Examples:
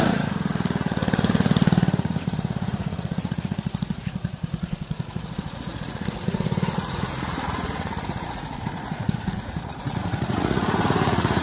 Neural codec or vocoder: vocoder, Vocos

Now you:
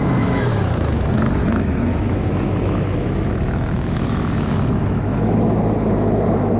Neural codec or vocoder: autoencoder, DAC-VAE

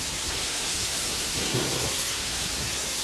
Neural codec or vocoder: codec, SNAC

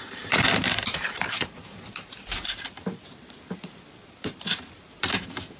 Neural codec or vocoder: vocoder, BigVGAN v2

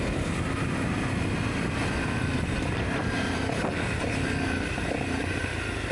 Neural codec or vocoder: none